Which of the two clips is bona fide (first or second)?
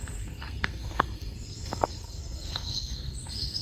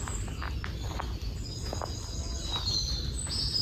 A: second